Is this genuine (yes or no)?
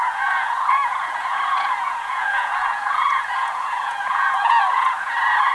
no